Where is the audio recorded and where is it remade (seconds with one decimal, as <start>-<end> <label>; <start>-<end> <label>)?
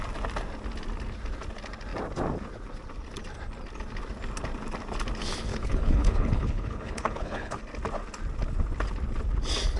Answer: 0.0-5.5 recorded; 5.5-7.6 remade; 7.6-9.8 recorded